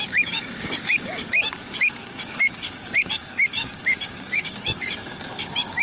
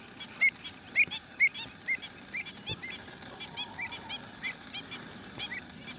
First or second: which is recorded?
second